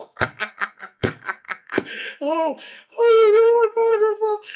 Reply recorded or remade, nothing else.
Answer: remade